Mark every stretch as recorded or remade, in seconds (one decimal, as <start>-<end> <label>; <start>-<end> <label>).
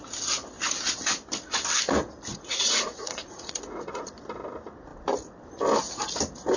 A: 0.0-2.3 recorded; 2.3-4.1 remade; 4.1-6.6 recorded